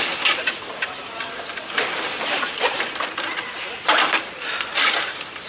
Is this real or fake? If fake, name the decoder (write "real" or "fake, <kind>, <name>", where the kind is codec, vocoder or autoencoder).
fake, vocoder, BigVGAN v2